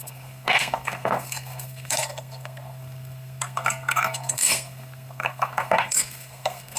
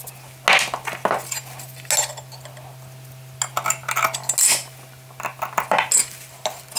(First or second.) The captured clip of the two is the second